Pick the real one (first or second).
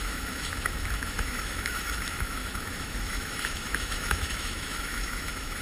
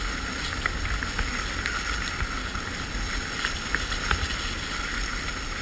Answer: second